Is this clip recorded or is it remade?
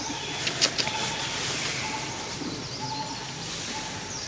recorded